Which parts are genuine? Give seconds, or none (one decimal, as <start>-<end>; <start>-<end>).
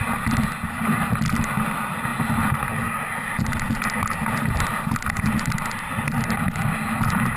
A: 0.0-7.4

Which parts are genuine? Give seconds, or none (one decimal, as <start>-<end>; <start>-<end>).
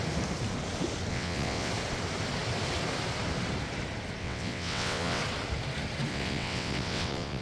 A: 0.0-1.1; 1.7-4.2; 5.2-6.1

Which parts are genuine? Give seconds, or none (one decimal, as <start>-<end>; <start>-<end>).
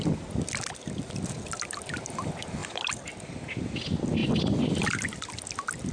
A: 0.0-5.9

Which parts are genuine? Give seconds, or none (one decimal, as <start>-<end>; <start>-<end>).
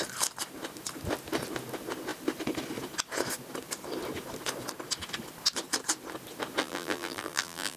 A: 0.0-6.6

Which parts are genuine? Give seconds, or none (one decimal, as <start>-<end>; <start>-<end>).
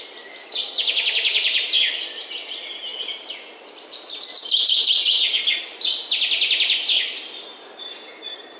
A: 0.0-8.6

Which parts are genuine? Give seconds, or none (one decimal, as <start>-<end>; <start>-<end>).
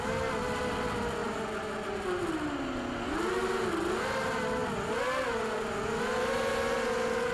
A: 0.0-7.3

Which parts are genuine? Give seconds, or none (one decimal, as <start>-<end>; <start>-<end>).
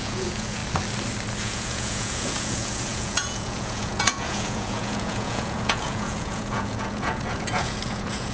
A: 0.6-1.4